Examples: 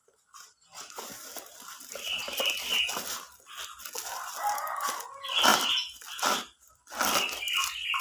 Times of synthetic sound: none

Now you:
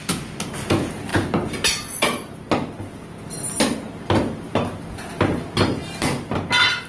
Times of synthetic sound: none

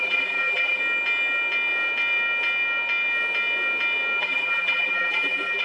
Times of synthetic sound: 0.0-0.8 (vocoder, BigVGAN v2); 4.2-5.6

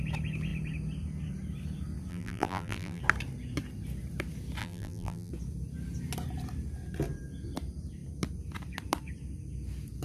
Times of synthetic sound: 2.1-3.0 (vocoder, BigVGAN v2); 4.6-5.3

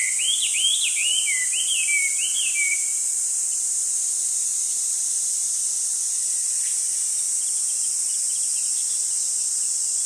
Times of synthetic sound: none